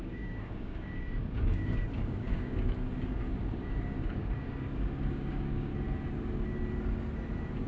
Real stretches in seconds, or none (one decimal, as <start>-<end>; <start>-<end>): 5.7-7.7